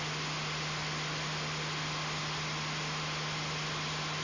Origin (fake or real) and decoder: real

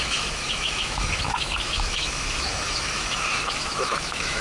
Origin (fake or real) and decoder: fake, autoencoder, DAC-VAE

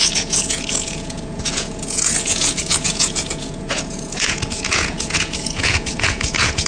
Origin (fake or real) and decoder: fake, vocoder, Vocos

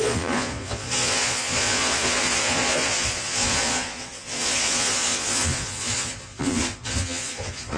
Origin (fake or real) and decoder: fake, vocoder, Vocos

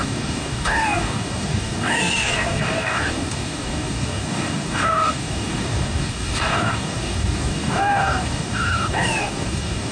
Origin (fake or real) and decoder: fake, codec, DAC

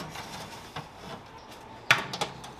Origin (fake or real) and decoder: real